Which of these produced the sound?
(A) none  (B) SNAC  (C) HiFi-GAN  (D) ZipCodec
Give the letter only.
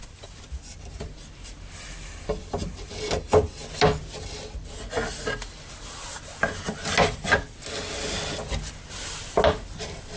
A